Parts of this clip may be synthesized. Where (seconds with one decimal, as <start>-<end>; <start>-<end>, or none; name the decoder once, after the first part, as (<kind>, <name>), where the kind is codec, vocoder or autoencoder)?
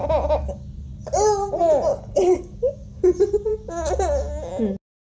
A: 1.9-2.4 (codec, HILCodec)